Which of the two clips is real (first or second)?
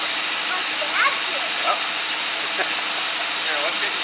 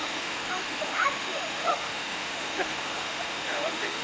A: first